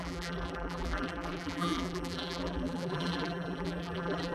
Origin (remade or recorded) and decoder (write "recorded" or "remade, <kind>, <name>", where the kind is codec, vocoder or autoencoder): remade, vocoder, BigVGAN v2